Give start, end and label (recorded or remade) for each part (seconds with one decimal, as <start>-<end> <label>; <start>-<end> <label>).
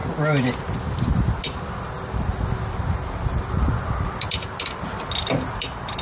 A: 0.0-0.6 recorded; 0.6-6.0 remade